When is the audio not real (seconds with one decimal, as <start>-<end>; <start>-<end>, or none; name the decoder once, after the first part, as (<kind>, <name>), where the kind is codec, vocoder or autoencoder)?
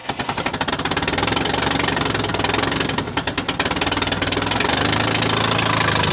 none